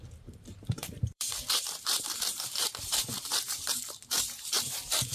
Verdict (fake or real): fake